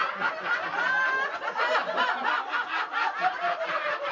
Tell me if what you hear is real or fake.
real